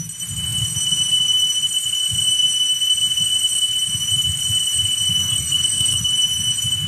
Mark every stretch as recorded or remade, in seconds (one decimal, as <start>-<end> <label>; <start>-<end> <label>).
0.0-5.2 recorded; 5.2-6.1 remade; 6.1-6.9 recorded